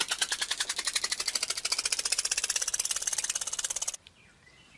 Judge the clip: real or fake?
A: real